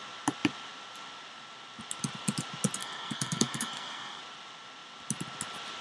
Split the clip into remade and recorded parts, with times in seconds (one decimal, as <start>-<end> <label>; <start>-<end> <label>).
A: 0.0-2.8 recorded; 2.8-4.2 remade; 4.2-5.8 recorded